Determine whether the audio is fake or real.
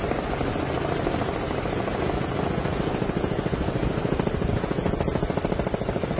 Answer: real